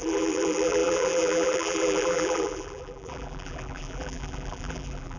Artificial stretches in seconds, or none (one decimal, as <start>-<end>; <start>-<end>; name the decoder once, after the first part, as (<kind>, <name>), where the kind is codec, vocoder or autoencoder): 0.0-5.2 (vocoder, BigVGAN v2)